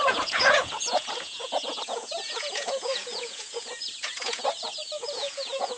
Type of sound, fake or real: fake